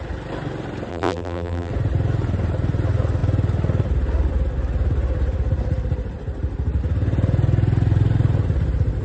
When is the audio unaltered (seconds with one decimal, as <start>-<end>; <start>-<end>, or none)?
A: 0.0-0.9; 1.7-9.0